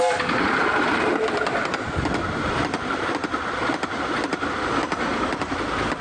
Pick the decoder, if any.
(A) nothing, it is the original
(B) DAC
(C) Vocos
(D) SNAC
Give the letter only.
A